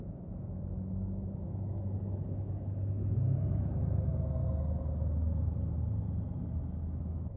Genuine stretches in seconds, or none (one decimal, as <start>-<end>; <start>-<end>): 4.4-7.0